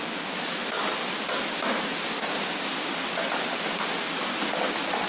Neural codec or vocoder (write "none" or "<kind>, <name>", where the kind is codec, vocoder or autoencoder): none